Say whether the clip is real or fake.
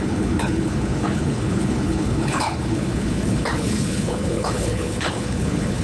fake